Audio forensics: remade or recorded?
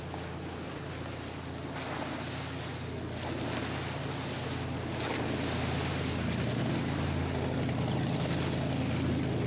recorded